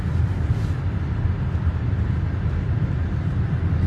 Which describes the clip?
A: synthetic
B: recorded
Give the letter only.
B